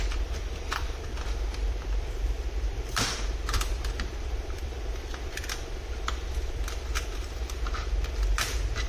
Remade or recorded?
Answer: remade